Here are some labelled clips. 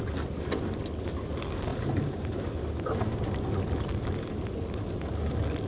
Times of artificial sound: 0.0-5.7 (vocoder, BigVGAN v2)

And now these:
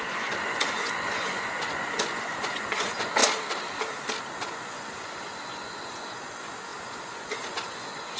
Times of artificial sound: 0.0-3.2 (vocoder, Vocos); 4.3-8.2

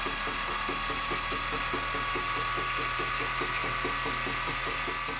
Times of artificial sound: none

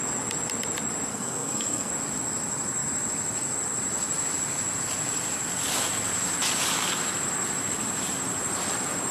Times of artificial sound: 1.1-1.9 (codec, SNAC)

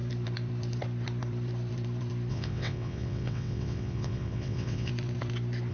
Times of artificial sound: 2.3-4.9 (vocoder, WaveNeXt)

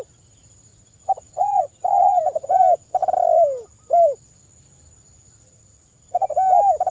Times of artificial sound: 0.7-2.2 (vocoder, Vocos); 5.5-6.3

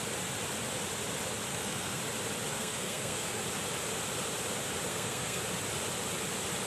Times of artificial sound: 1.5-2.0 (codec, SNAC); 2.5-3.4; 4.9-5.4

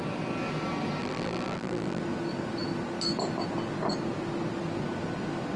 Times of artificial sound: 1.0-2.0 (vocoder, BigVGAN v2)